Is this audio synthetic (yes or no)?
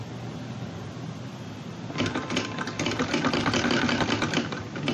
no